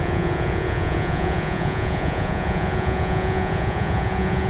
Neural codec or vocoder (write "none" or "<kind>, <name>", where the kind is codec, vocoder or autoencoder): vocoder, Vocos